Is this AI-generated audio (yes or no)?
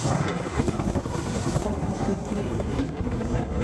yes